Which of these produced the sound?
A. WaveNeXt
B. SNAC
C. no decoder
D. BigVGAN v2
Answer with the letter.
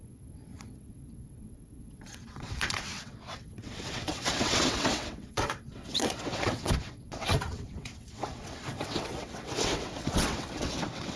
A